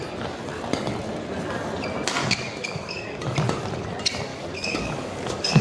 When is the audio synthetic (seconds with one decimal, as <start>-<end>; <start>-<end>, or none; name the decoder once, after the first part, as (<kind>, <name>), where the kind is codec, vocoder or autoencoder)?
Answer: 2.2-3.2 (codec, DAC); 4.3-5.6